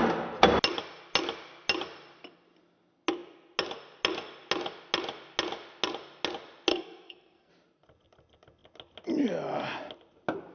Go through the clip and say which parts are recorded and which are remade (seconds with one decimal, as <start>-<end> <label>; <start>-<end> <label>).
0.0-6.7 recorded; 6.7-7.5 remade; 7.5-10.5 recorded